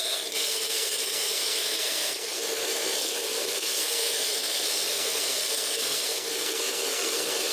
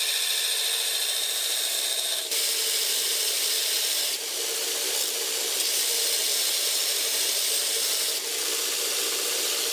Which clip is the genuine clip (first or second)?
second